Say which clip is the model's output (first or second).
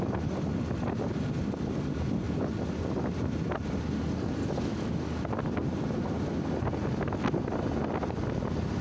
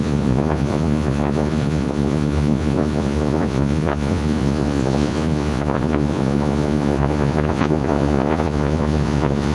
second